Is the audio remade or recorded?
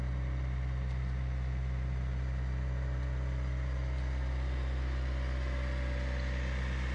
recorded